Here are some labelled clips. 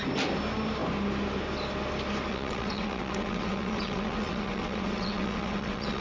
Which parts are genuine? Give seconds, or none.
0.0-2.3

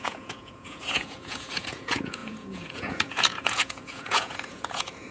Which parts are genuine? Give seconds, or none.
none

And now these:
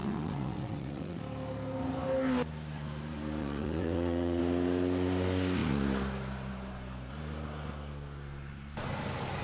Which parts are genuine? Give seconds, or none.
1.2-3.4; 4.4-9.4

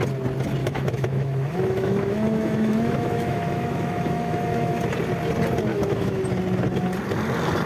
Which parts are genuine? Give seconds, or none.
0.0-0.6; 4.8-5.7; 6.2-7.7

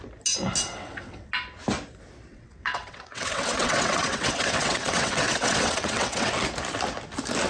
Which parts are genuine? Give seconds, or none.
0.0-0.7; 1.3-2.3; 6.3-7.5